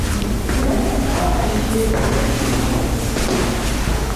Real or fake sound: real